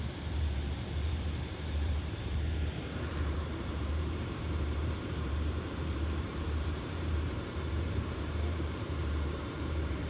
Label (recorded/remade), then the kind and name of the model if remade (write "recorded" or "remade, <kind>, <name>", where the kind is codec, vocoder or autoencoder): remade, vocoder, BigVGAN v2